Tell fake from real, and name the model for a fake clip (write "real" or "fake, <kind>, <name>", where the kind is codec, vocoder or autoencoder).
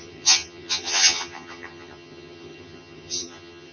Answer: fake, vocoder, HiFi-GAN